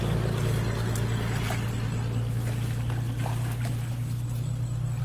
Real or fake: real